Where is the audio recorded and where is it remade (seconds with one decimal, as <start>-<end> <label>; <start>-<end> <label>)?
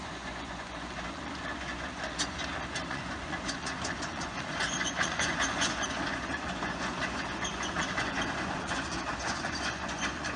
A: 0.0-2.4 remade; 2.4-2.9 recorded; 2.9-10.4 remade